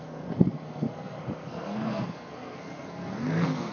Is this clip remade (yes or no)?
yes